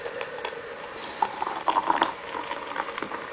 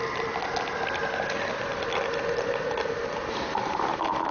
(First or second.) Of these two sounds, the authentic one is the second